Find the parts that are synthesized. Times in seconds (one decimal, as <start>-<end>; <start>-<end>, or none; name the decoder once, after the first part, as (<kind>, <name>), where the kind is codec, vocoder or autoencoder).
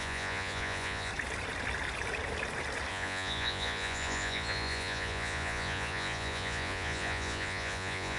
0.0-1.1 (vocoder, Vocos); 2.9-8.2